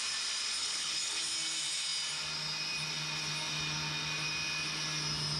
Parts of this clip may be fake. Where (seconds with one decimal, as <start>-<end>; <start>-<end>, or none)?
0.6-1.2

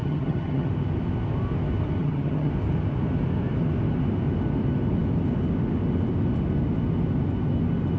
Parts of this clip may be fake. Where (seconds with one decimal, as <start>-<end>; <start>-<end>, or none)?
0.0-0.7; 2.0-2.5

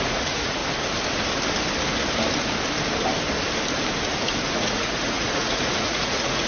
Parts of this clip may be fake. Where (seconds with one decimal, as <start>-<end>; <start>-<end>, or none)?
0.0-0.6; 4.5-6.5

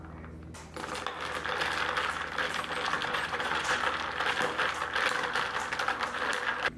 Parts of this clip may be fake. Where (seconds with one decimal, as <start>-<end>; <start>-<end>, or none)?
3.0-3.8